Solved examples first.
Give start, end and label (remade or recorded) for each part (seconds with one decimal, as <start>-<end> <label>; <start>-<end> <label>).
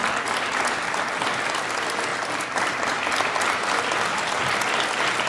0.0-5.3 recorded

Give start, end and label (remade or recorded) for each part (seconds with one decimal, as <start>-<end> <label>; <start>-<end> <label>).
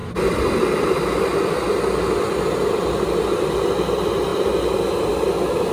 0.0-5.7 recorded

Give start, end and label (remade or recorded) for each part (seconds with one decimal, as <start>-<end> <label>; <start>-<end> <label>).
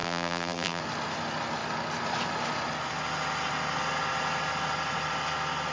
0.0-0.8 remade; 0.8-5.7 recorded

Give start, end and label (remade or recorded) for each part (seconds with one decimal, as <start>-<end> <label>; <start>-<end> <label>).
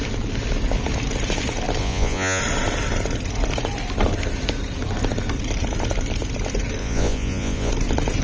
0.0-1.8 recorded; 1.8-2.4 remade; 2.4-6.8 recorded; 6.8-7.7 remade; 7.7-8.2 recorded